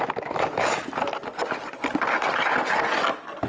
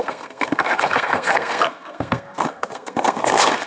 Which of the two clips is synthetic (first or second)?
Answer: second